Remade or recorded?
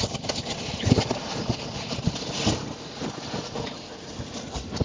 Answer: recorded